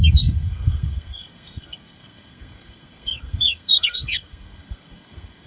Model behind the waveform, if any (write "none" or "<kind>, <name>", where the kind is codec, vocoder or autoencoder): codec, SNAC